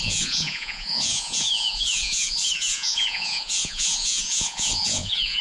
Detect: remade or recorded remade